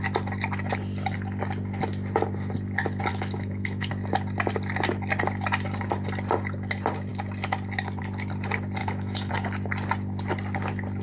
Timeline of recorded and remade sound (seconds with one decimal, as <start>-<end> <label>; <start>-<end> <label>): 0.0-3.1 recorded; 3.1-3.9 remade; 3.9-8.8 recorded; 8.8-9.3 remade; 9.3-11.0 recorded